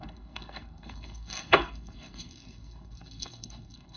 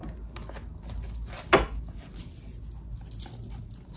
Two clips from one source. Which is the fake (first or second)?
first